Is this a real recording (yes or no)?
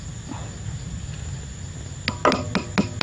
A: yes